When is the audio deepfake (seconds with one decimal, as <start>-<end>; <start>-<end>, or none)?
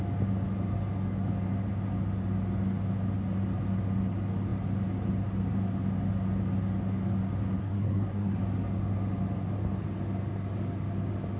7.6-8.4